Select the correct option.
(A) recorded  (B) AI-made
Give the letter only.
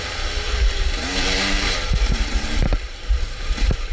B